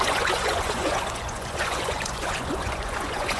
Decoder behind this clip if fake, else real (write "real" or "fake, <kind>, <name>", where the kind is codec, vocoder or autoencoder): fake, vocoder, Vocos